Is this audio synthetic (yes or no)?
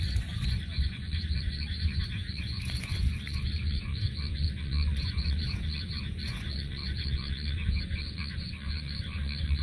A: yes